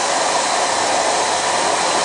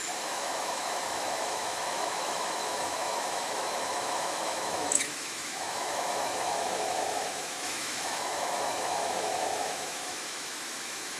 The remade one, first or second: second